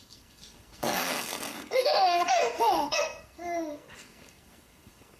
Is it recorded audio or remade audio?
remade